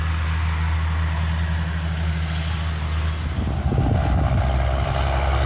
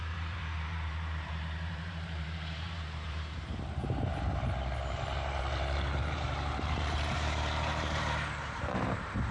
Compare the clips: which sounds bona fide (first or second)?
first